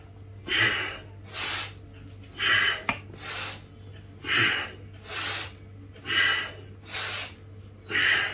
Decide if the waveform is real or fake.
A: real